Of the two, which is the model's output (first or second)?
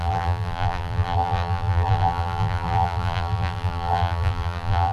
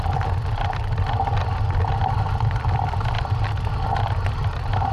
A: first